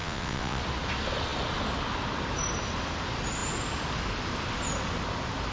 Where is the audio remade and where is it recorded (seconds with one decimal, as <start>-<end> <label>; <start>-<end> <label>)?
0.0-0.6 remade; 0.6-5.5 recorded